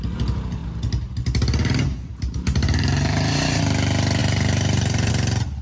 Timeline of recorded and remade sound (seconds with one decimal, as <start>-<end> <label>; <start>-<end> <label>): 0.0-1.6 recorded; 1.6-3.6 remade; 3.6-4.2 recorded; 4.2-5.1 remade; 5.1-5.6 recorded